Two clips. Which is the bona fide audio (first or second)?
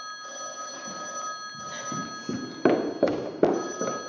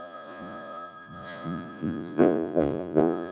first